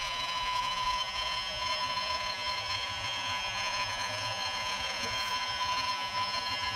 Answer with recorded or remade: remade